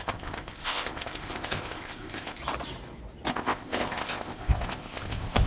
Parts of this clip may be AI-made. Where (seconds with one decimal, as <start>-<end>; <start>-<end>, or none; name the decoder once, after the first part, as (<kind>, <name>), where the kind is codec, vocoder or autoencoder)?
0.0-2.4 (codec, ZipCodec); 3.3-5.5